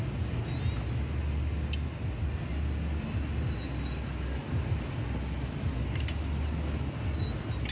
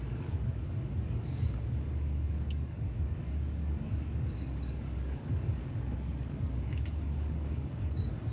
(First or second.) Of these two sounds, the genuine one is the first